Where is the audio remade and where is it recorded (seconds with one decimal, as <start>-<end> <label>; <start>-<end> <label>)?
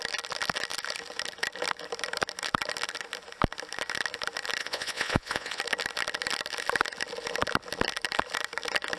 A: 0.0-4.6 recorded; 4.6-5.6 remade; 5.6-9.0 recorded